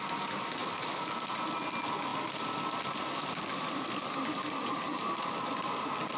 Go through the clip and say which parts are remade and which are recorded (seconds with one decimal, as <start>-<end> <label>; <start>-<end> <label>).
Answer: 0.0-0.6 recorded; 0.6-1.6 remade; 1.6-6.2 recorded